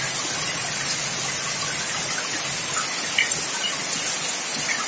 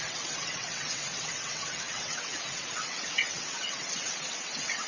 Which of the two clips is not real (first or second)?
second